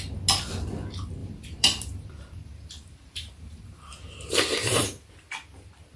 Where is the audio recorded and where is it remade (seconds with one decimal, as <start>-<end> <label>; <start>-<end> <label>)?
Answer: 0.0-1.2 recorded; 1.2-4.8 remade; 4.8-6.0 recorded